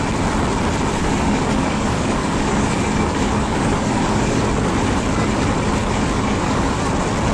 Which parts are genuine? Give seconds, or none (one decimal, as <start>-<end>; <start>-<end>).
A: 0.0-1.0; 4.4-5.8; 6.8-7.3